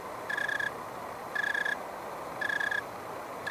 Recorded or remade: recorded